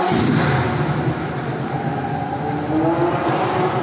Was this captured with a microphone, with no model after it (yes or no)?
yes